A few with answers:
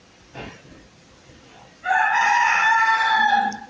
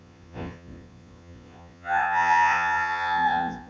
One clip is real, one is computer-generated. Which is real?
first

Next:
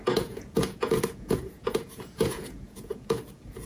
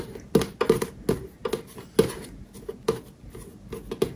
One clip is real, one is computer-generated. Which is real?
second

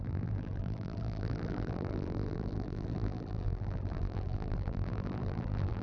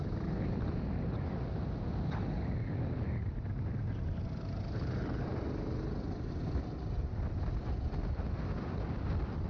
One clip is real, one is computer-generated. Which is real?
second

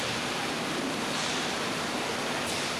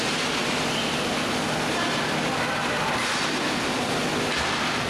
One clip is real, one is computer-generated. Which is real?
second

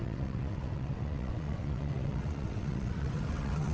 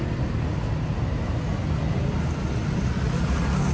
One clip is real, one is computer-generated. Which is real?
second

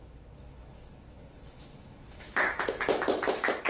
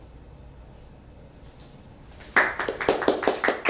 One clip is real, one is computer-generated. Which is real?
second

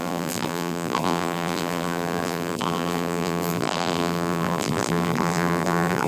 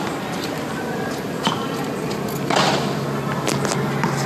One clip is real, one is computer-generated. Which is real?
second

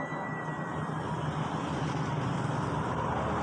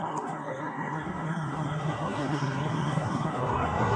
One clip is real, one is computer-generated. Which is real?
first